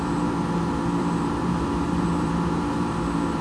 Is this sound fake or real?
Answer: fake